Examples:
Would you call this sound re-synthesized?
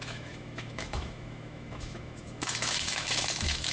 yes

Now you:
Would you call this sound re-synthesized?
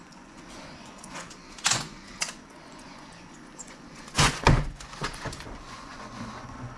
yes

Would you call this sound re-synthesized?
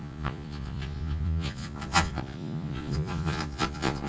yes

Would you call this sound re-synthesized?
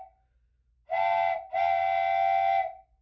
no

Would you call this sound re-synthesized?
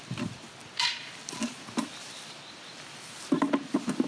no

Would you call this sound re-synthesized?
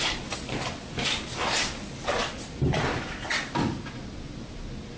no